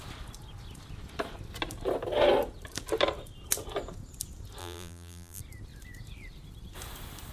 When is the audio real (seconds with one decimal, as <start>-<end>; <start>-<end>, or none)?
0.0-4.6; 5.4-7.3